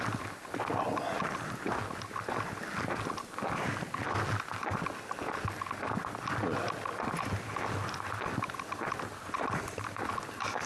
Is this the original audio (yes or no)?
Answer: yes